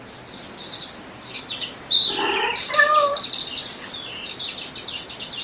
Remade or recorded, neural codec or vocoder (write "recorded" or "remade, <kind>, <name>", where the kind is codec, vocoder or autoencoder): recorded